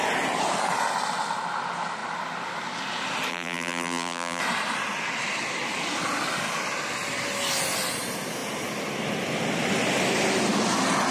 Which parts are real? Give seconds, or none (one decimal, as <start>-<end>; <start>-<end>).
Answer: 0.0-3.3; 4.4-11.1

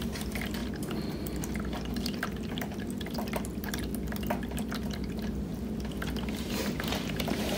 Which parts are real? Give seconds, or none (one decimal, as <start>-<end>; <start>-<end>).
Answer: 0.6-1.9; 3.9-5.1; 5.5-6.3

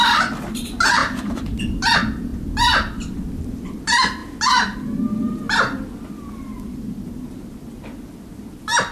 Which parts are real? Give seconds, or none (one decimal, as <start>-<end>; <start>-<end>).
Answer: 0.0-1.0; 1.6-8.9

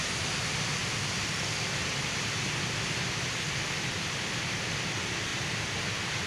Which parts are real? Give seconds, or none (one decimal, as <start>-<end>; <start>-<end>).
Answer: 0.0-6.3